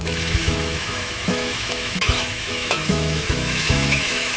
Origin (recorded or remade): remade